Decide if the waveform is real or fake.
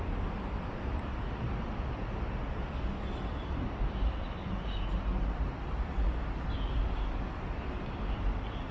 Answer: fake